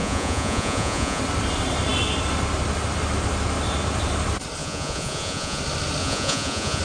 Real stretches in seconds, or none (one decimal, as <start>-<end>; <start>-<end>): 1.2-4.6; 5.6-6.0